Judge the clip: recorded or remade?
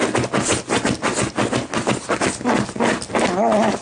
recorded